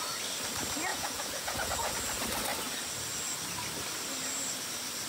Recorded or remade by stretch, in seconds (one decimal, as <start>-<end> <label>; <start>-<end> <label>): 0.0-0.9 recorded; 0.9-1.9 remade; 1.9-5.1 recorded